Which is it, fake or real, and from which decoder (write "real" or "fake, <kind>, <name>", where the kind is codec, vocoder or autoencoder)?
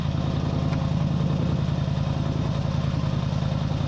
real